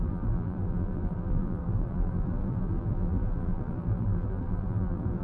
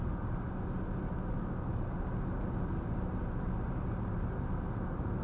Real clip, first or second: second